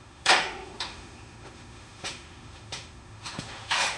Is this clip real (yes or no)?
no